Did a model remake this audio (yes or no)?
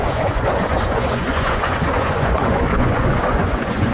yes